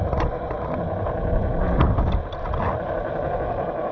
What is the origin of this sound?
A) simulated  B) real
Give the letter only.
B